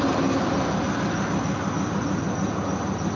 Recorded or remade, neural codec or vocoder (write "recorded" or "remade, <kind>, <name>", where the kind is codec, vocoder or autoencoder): recorded